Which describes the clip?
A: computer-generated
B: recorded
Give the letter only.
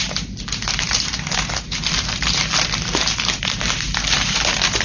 A